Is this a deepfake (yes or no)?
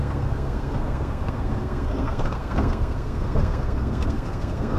yes